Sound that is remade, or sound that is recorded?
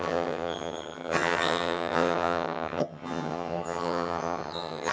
remade